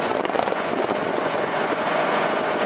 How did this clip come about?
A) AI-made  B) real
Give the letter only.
A